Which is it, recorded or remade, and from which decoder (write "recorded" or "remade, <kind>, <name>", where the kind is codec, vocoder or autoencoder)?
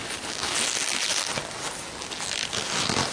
recorded